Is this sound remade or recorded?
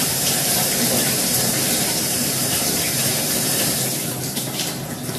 remade